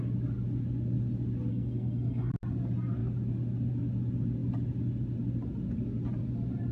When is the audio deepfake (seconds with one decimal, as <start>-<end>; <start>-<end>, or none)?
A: 1.5-2.3